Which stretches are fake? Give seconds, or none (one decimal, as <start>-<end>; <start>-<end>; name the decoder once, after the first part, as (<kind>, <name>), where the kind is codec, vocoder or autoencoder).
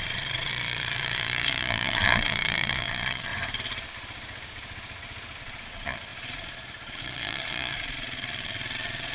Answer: 0.0-3.3 (vocoder, Vocos); 5.4-9.1